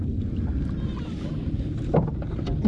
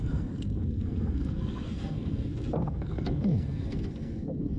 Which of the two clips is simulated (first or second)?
second